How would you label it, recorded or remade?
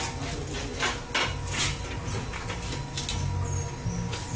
recorded